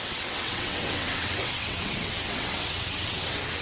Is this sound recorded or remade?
remade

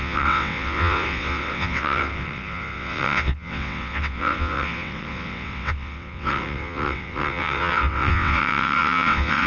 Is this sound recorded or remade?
remade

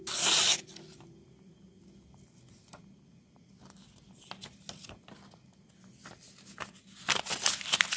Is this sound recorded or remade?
recorded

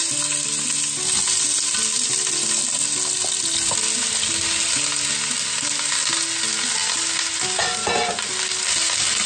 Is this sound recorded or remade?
recorded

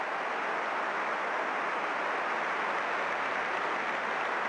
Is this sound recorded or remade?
recorded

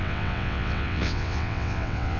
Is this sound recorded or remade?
remade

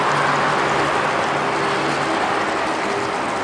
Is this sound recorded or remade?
recorded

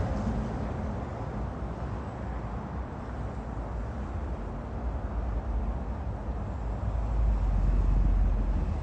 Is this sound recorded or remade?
recorded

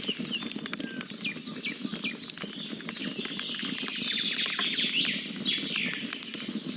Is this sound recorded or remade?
recorded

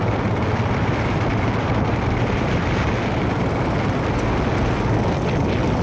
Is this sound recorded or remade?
recorded